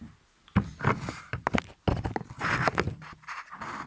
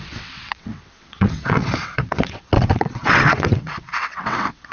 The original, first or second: first